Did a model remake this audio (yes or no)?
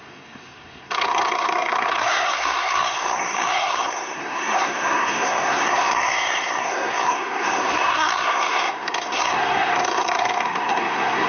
yes